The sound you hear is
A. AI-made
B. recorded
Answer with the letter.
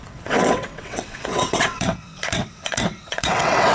A